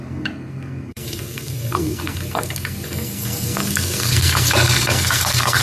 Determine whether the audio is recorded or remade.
remade